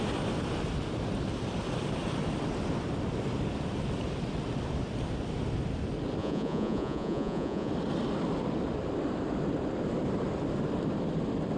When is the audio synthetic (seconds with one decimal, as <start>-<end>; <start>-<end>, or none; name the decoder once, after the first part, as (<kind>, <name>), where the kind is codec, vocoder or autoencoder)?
6.2-7.7 (vocoder, Vocos)